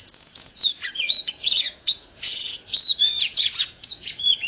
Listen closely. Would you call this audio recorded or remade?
remade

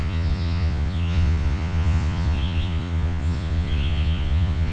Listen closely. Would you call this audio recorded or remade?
remade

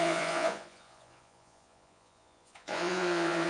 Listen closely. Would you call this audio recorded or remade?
remade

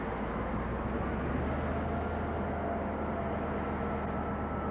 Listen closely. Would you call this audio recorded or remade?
recorded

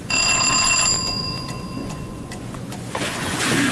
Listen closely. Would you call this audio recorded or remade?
remade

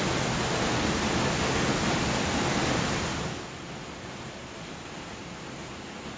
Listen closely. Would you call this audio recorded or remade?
recorded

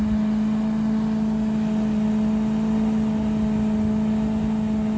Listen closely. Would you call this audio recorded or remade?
recorded